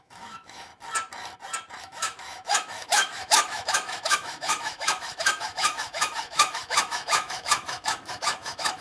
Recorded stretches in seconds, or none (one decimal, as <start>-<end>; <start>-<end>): 0.7-1.8

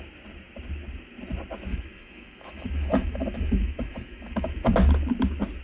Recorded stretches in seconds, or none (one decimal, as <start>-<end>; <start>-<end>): 0.0-1.7; 4.7-5.6

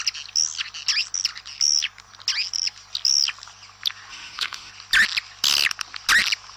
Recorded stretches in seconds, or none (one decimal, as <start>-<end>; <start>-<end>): 0.0-4.1; 4.7-6.6

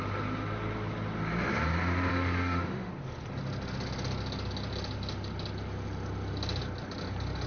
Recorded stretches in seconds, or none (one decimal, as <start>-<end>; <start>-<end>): 0.0-2.1; 2.9-7.5